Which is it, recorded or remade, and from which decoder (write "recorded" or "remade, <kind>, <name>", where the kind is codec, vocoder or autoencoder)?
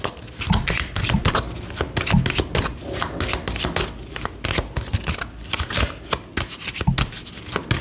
recorded